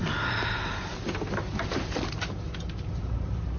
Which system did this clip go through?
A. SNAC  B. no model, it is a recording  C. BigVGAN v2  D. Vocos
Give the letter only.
B